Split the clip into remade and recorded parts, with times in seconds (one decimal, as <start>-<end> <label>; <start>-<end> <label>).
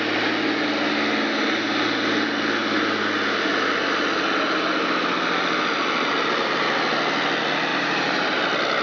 0.0-7.7 recorded; 7.7-8.4 remade; 8.4-8.8 recorded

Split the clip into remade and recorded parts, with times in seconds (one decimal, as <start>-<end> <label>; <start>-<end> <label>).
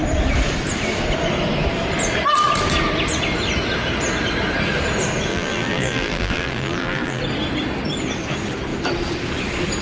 0.0-5.3 recorded; 5.3-7.2 remade; 7.2-9.8 recorded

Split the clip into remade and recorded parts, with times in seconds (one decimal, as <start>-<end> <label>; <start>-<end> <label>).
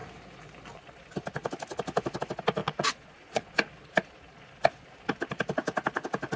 0.0-2.6 recorded; 2.6-3.5 remade; 3.5-6.4 recorded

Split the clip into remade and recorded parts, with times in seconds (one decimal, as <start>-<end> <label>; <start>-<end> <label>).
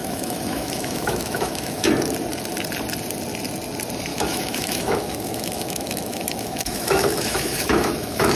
0.0-1.9 remade; 1.9-4.1 recorded; 4.1-8.4 remade